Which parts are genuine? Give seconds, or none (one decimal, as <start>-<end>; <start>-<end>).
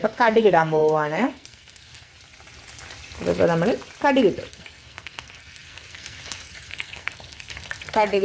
2.1-4.5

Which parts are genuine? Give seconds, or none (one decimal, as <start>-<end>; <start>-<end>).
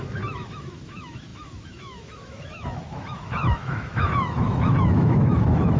none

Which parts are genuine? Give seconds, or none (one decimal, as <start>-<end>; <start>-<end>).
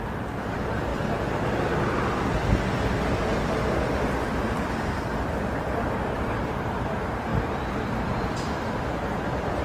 0.0-9.6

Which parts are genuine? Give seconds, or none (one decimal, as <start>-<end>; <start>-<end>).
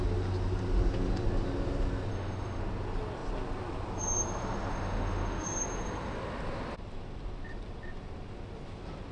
0.0-2.1; 2.6-4.7; 5.6-9.1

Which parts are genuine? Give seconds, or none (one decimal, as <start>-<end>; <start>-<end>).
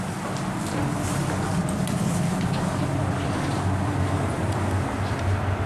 0.0-5.7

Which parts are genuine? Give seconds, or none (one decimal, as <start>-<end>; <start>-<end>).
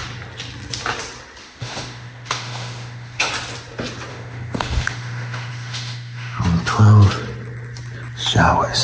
0.0-1.4; 3.3-4.1; 6.4-8.8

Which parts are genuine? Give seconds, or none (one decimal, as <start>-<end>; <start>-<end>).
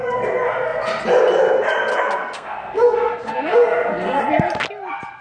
0.0-1.9; 4.2-5.2